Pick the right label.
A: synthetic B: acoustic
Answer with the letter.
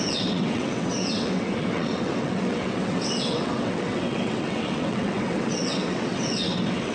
A